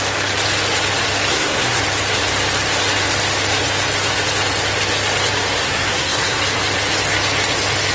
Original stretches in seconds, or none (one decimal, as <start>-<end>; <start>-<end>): 0.0-1.3; 1.8-5.6; 6.4-7.9